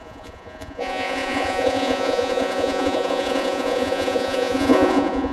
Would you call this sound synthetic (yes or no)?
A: yes